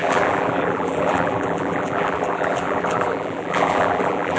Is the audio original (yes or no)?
no